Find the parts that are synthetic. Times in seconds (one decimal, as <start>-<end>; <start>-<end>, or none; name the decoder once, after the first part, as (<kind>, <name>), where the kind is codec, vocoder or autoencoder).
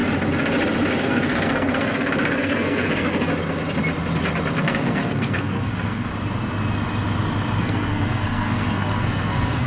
1.0-3.3 (codec, SNAC); 4.6-6.1; 7.6-9.7